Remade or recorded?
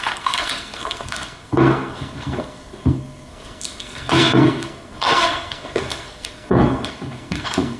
remade